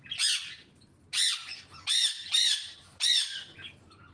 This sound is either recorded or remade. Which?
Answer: recorded